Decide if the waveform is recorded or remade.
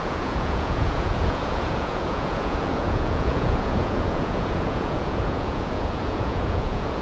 remade